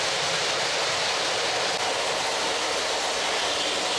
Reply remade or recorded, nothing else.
recorded